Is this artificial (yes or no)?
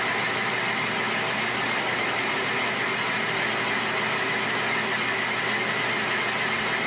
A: no